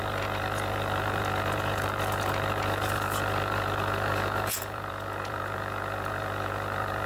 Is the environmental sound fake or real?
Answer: fake